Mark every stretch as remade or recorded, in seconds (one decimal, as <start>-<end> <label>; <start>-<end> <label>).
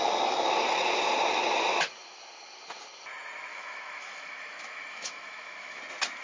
0.0-3.5 recorded; 3.5-5.8 remade; 5.8-6.2 recorded